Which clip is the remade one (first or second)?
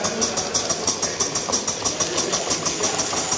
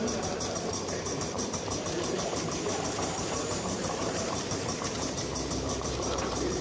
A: second